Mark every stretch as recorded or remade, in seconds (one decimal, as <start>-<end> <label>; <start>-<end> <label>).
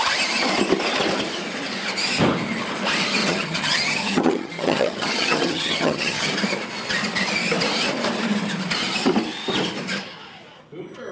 0.0-3.2 recorded; 3.2-6.3 remade; 6.3-11.1 recorded